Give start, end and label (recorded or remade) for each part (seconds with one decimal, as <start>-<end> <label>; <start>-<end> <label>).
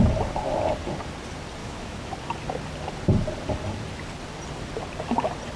0.0-1.6 recorded; 1.6-2.1 remade; 2.1-5.6 recorded